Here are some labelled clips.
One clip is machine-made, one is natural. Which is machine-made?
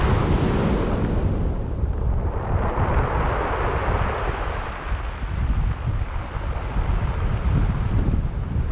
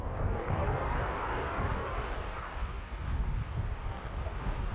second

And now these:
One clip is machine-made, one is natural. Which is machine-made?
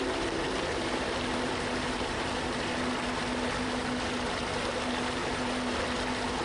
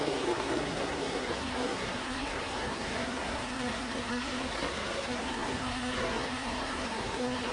second